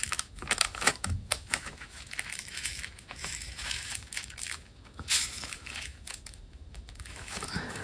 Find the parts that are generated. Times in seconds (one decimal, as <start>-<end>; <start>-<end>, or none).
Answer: 0.0-7.8